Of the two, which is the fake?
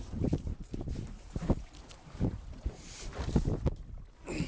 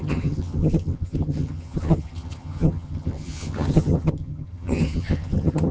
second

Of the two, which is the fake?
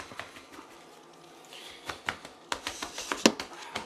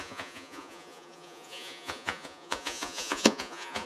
second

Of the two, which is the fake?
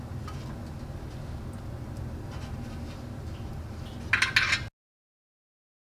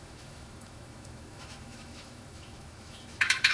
second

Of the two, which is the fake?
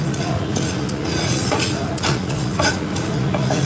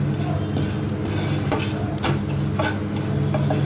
first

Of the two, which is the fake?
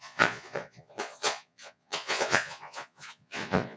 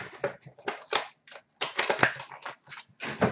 first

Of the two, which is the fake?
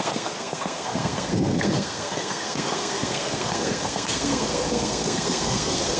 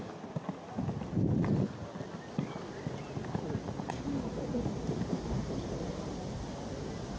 first